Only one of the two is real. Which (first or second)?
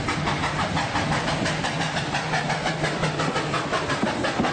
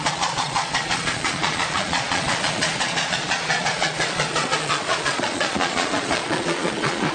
first